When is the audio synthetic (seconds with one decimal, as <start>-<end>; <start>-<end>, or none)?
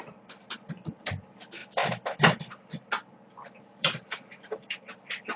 0.0-5.4